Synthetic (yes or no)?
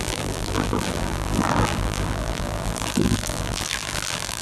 yes